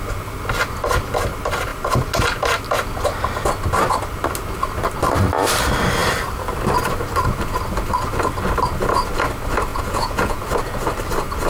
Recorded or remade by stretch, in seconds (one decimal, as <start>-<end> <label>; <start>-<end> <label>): 0.0-9.7 recorded; 9.7-10.4 remade; 10.4-11.5 recorded